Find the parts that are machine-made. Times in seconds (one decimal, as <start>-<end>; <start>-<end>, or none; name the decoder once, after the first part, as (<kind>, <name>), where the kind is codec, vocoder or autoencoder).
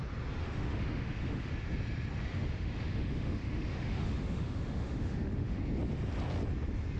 0.4-1.5 (autoencoder, DAC-VAE); 2.3-5.6